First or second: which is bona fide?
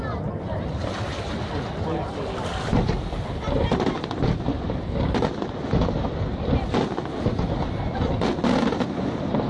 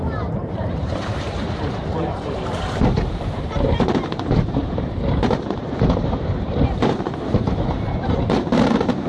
first